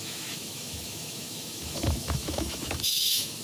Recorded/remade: remade